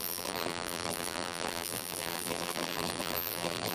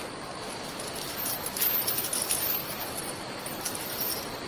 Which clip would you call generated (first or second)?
first